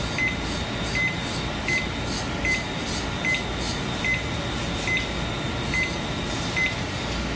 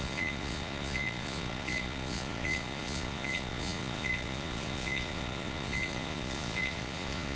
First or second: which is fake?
second